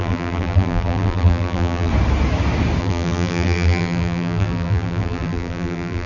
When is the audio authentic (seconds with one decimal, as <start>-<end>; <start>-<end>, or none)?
1.9-2.8